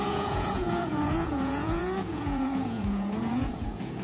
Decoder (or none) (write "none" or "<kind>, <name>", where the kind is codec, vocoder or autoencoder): vocoder, Vocos